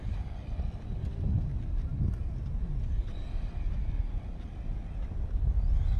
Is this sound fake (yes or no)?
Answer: no